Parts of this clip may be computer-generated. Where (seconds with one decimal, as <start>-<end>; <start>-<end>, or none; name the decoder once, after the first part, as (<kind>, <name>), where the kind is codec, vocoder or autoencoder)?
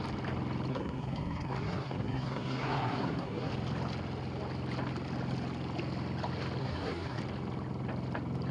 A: 0.7-3.5 (codec, SNAC); 6.6-7.2